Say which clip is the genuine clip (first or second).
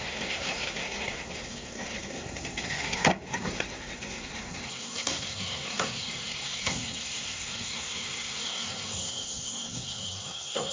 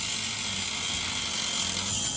second